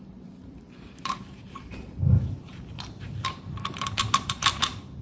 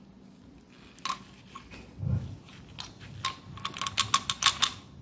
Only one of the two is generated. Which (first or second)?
first